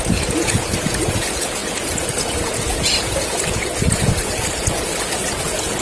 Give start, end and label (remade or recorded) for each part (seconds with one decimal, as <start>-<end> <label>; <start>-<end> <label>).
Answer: 0.0-5.8 remade